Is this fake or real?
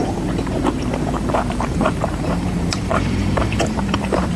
fake